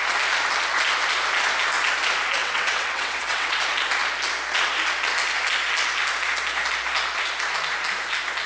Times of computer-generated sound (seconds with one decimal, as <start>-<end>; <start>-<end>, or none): 2.4-3.6

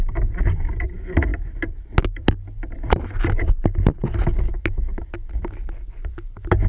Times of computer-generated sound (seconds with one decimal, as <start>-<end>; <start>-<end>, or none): none

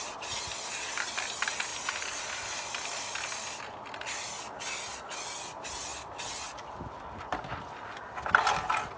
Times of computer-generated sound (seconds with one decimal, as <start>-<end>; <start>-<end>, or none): none

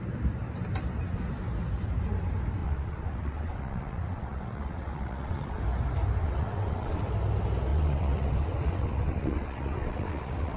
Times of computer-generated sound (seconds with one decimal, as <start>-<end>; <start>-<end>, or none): 2.6-5.6; 6.2-7.0; 7.7-10.6

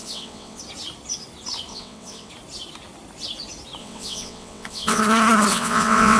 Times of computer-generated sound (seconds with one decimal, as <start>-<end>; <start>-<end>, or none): 0.0-0.6; 1.7-2.3; 3.8-5.0; 5.5-6.2